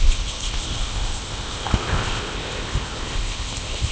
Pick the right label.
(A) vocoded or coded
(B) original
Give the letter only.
A